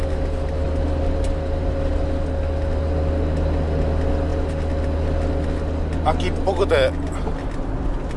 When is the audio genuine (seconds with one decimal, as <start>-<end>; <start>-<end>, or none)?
0.0-8.2